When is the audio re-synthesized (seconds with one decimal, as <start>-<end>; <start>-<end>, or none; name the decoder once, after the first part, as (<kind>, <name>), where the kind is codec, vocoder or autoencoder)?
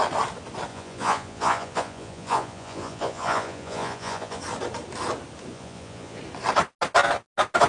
0.7-4.4 (vocoder, Vocos); 5.5-6.2